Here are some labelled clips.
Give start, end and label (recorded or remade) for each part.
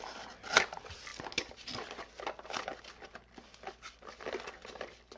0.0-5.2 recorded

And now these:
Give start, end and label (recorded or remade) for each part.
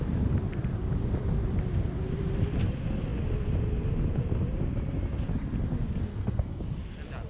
0.0-6.1 recorded; 6.1-6.6 remade; 6.6-7.3 recorded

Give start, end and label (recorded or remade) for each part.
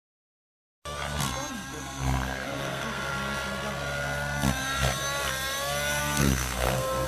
0.0-1.5 recorded; 1.5-3.1 remade; 3.1-6.0 recorded; 6.0-7.1 remade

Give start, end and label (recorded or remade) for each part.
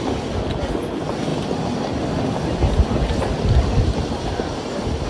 0.0-5.1 recorded